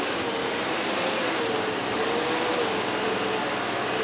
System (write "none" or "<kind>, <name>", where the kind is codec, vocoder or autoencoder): none